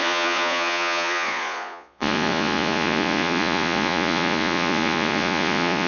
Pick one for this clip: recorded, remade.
remade